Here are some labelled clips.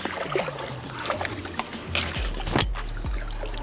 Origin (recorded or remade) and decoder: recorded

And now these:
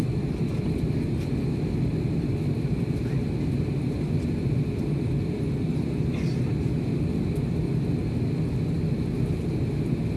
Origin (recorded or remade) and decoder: recorded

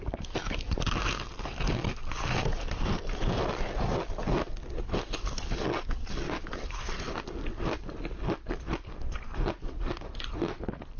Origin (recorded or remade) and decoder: recorded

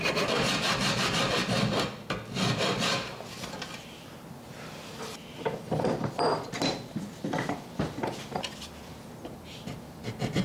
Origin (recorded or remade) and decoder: recorded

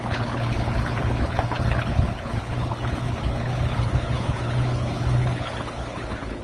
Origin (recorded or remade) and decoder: remade, codec, HILCodec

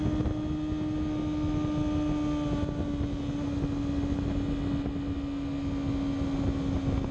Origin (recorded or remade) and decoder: recorded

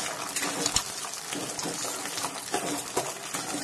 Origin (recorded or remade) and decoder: recorded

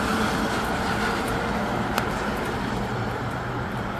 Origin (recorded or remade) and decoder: recorded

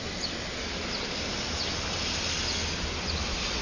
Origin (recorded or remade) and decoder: recorded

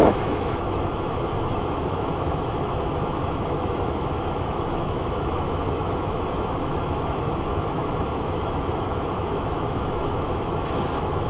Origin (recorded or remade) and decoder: remade, autoencoder, DAC-VAE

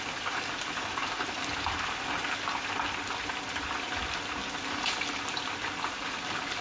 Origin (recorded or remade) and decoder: recorded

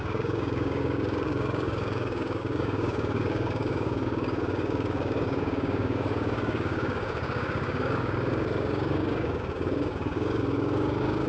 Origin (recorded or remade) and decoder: remade, codec, DAC